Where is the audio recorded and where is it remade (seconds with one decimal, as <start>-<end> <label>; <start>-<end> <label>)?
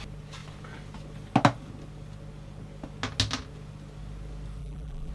0.0-4.6 recorded; 4.6-5.1 remade